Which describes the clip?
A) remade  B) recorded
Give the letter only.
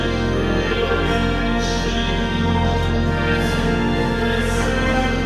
A